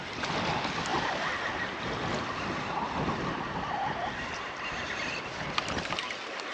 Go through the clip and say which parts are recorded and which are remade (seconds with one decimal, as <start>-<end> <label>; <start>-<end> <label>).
0.0-6.5 recorded